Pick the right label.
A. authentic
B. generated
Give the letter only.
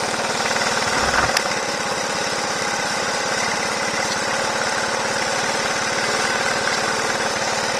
A